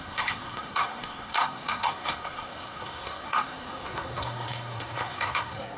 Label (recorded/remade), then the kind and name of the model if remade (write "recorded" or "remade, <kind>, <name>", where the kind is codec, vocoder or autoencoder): remade, codec, SNAC